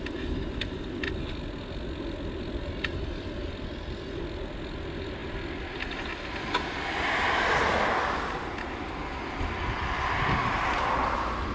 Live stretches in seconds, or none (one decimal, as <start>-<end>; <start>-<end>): 0.0-11.5